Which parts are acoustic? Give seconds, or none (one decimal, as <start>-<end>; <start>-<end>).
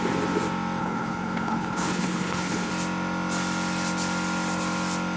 0.0-0.8; 2.7-5.2